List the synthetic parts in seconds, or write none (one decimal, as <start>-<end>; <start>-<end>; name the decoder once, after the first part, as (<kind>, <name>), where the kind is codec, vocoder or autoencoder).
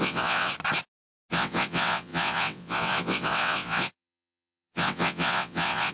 0.0-0.5 (vocoder, WaveNeXt); 1.3-5.9